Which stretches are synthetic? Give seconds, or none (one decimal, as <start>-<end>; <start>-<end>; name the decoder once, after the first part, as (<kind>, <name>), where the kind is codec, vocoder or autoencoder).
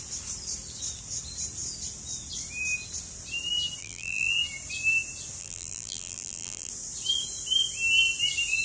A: 3.8-4.3 (vocoder, BigVGAN v2); 5.4-6.7